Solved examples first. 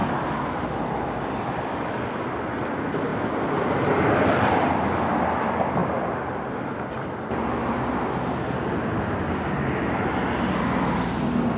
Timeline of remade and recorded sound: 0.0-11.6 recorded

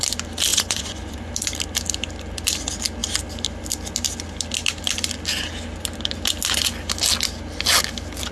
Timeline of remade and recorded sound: 0.0-0.5 recorded; 0.5-1.2 remade; 1.2-8.3 recorded

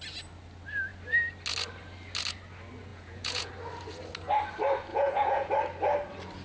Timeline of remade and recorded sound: 0.0-2.9 recorded; 2.9-3.5 remade; 3.5-4.9 recorded; 4.9-5.5 remade; 5.5-6.4 recorded

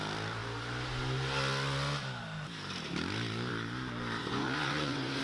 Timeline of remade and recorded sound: 0.0-4.2 recorded; 4.2-5.2 remade

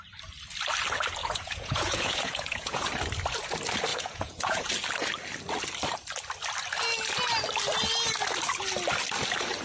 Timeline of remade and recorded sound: 0.0-1.2 recorded; 1.2-2.9 remade; 2.9-3.9 recorded; 3.9-4.7 remade; 4.7-9.6 recorded

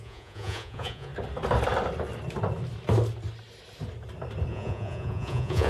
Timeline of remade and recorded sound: 0.0-1.1 remade; 1.1-4.5 recorded; 4.5-5.7 remade